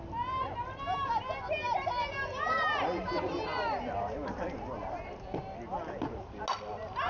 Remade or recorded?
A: recorded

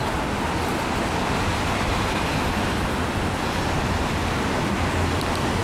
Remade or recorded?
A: recorded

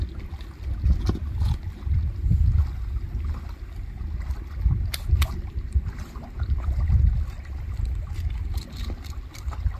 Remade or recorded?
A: recorded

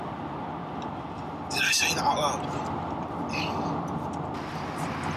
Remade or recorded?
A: recorded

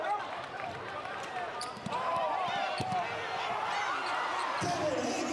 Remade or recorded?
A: remade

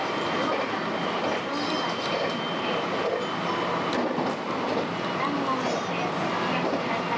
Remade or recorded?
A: recorded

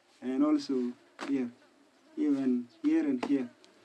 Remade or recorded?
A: recorded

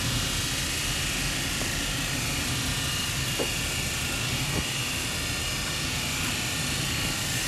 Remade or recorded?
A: recorded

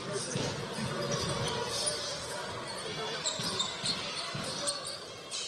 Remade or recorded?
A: recorded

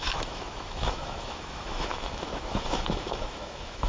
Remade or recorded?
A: remade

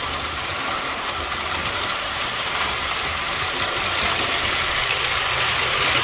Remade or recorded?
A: remade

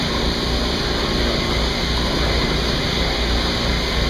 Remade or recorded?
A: recorded